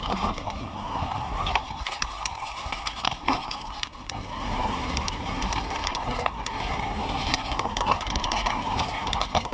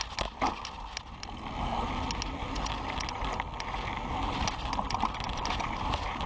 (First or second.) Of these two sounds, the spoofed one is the first